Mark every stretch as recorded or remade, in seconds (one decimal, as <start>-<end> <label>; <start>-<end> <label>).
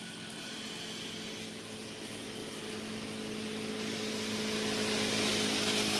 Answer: 0.0-6.0 recorded